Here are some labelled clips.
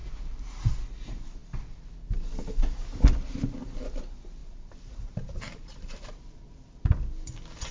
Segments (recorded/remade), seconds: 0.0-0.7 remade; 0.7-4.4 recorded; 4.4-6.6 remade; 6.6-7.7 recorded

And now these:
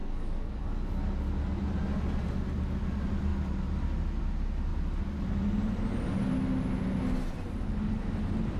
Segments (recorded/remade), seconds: 0.0-0.7 remade; 0.7-8.6 recorded

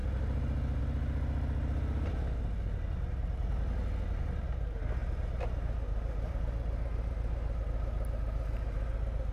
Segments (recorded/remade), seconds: 0.0-9.3 recorded